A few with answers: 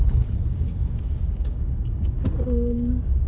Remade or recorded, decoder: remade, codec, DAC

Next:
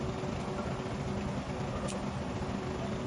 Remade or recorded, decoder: recorded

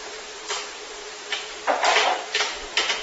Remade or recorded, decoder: remade, vocoder, BigVGAN v2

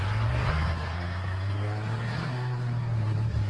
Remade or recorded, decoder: remade, codec, SNAC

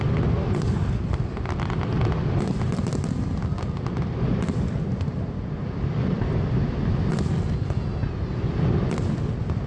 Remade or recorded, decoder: recorded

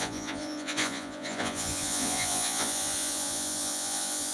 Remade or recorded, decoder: remade, vocoder, Vocos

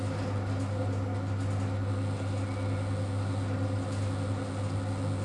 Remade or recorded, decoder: recorded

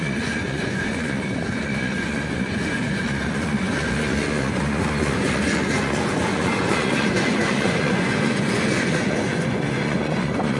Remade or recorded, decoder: remade, vocoder, Vocos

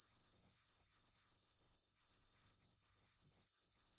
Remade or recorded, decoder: remade, codec, SNAC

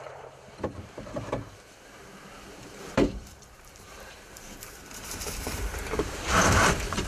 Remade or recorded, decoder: remade, vocoder, BigVGAN v2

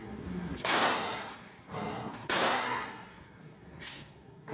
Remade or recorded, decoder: remade, codec, SNAC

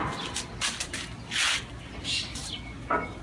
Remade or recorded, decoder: recorded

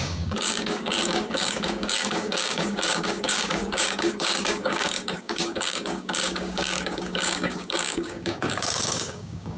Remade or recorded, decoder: remade, codec, DAC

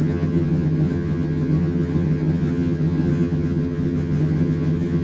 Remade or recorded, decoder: remade, vocoder, HiFi-GAN